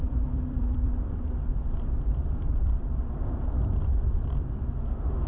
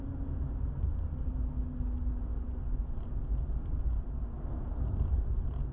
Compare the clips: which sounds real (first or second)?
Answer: second